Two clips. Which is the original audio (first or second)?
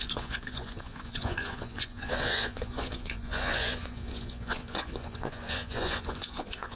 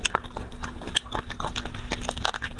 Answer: second